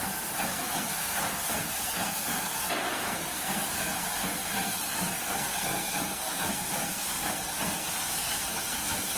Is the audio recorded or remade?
remade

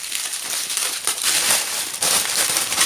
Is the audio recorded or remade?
remade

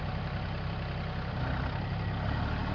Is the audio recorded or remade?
recorded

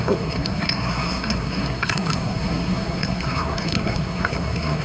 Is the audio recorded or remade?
remade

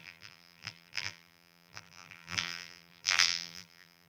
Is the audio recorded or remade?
remade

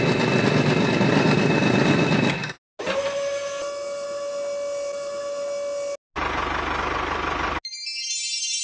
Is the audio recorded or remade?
recorded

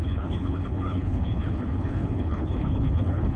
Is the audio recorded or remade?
remade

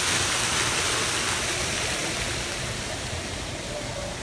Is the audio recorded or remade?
recorded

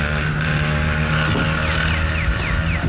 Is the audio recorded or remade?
recorded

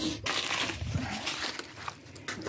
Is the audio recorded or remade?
recorded